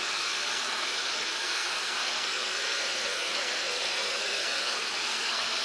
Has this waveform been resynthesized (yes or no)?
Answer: yes